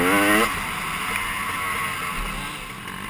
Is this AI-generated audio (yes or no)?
no